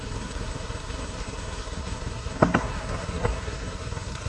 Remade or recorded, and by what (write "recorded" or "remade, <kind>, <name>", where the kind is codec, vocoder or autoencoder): remade, codec, SNAC